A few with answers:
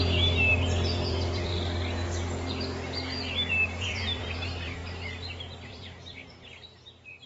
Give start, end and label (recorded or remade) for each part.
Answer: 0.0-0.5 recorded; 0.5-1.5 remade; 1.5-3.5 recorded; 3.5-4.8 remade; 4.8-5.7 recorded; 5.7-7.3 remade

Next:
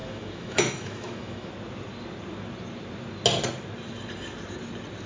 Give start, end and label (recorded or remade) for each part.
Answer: 0.0-1.5 remade; 1.5-5.1 recorded

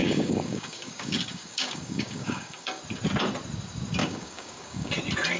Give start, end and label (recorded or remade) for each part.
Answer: 0.0-2.8 remade; 2.8-4.0 recorded; 4.0-4.9 remade; 4.9-5.4 recorded

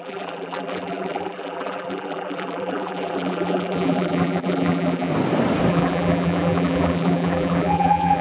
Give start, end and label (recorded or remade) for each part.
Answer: 0.0-5.1 remade; 5.1-5.7 recorded; 5.7-8.2 remade

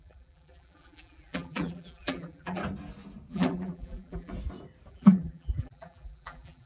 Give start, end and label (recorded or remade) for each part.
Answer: 0.0-2.6 remade; 2.6-3.3 recorded; 3.3-4.3 remade; 4.3-4.9 recorded; 4.9-6.7 remade

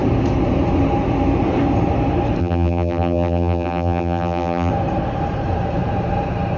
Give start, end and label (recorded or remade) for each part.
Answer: 0.0-2.4 recorded; 2.4-4.7 remade; 4.7-6.6 recorded

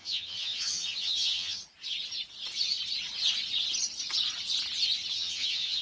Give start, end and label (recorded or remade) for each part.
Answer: 0.0-1.6 remade; 1.6-5.1 recorded; 5.1-5.8 remade